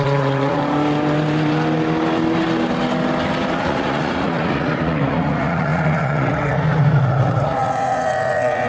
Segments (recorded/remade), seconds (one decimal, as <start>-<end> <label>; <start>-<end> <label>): 0.0-0.6 remade; 0.6-3.6 recorded; 3.6-8.7 remade